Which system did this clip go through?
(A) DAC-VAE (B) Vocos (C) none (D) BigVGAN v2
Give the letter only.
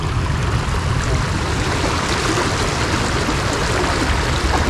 C